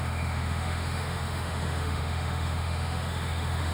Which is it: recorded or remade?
remade